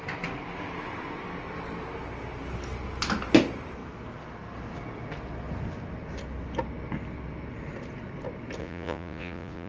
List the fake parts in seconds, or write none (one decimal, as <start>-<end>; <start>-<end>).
8.6-9.7

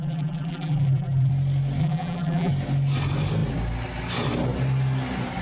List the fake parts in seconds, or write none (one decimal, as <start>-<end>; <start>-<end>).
0.0-1.3; 1.8-2.5